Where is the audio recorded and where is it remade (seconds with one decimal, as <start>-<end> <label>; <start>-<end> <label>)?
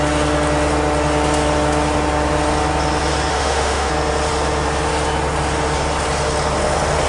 0.0-3.3 recorded; 3.3-3.9 remade; 3.9-7.1 recorded